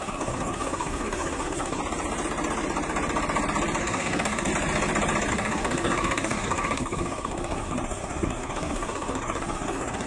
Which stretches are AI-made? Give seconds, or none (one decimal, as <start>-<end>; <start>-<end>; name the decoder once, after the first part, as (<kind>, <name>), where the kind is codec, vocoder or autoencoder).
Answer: 0.0-1.8 (codec, SNAC); 3.8-4.5; 5.3-10.1